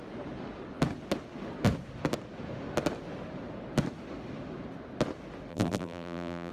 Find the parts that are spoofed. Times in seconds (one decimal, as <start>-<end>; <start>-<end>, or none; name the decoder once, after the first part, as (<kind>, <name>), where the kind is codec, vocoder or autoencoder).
5.5-6.5 (vocoder, BigVGAN v2)